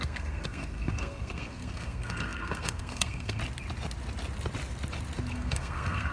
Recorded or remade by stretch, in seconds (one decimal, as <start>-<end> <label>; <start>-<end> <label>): 0.0-3.4 remade; 3.4-5.3 recorded; 5.3-6.1 remade